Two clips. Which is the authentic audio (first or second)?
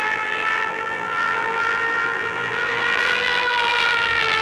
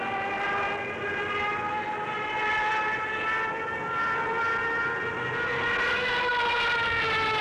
second